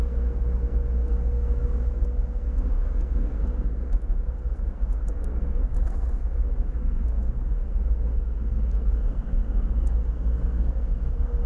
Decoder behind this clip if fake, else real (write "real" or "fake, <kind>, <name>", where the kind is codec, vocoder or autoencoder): fake, codec, SNAC